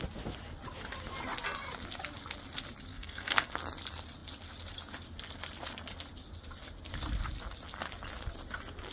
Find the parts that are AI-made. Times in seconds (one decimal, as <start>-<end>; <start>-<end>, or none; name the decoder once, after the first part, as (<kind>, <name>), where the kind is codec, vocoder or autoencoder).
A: 2.9-3.5 (codec, SNAC)